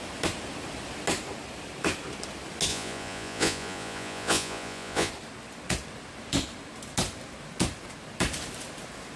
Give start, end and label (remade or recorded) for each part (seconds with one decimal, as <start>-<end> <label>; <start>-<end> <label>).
0.0-2.7 recorded; 2.7-5.1 remade; 5.1-9.2 recorded